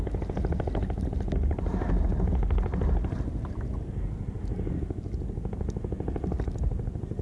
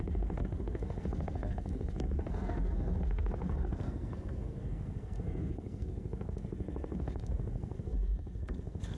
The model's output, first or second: second